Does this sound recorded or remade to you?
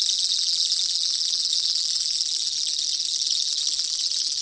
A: recorded